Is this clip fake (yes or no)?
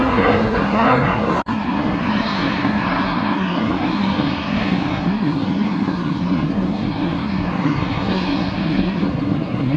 yes